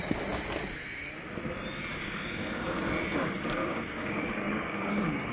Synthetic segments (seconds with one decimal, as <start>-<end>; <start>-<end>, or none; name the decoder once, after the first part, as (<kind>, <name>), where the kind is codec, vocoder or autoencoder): 1.9-2.8 (codec, DAC); 3.6-5.3